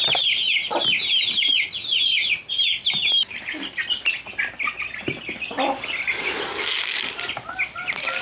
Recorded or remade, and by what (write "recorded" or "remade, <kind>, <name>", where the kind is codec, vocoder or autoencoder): recorded